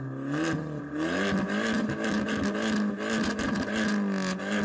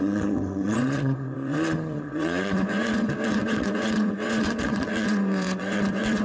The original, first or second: first